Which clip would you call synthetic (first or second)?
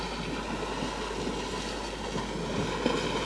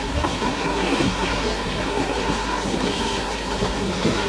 second